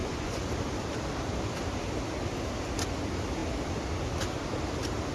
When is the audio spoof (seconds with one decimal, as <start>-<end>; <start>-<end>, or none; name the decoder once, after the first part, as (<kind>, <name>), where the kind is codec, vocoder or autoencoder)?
0.0-0.5 (vocoder, Vocos)